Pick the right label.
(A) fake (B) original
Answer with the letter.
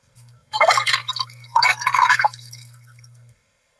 A